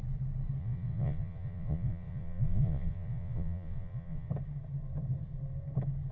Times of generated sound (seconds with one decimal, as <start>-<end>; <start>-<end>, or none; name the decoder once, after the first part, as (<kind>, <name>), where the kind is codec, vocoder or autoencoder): 0.6-4.3 (vocoder, Vocos)